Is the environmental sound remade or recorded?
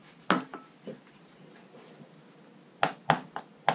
recorded